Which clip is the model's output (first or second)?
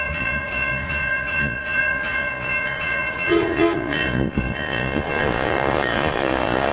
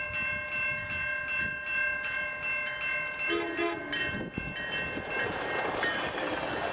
first